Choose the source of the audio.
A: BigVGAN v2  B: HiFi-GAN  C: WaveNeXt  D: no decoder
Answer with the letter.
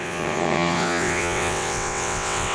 C